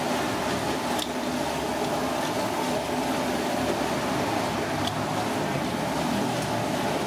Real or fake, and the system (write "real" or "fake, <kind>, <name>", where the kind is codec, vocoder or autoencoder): real